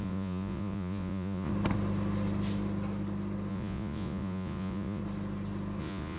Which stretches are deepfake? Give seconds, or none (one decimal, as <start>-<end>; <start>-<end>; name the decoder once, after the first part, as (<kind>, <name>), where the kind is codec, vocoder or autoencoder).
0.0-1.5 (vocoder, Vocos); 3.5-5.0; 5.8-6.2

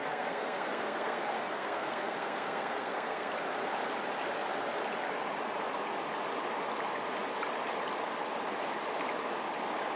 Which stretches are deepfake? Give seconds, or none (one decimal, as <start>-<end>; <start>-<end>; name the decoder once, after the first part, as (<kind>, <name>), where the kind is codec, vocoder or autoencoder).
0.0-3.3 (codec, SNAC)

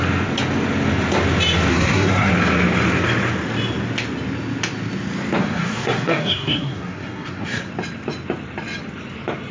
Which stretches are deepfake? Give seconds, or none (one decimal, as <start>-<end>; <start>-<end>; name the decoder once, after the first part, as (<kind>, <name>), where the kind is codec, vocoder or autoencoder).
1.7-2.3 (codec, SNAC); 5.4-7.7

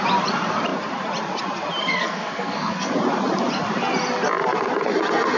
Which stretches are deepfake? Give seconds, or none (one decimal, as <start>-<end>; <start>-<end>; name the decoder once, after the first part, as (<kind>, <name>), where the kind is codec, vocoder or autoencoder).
1.8-2.9 (codec, SNAC)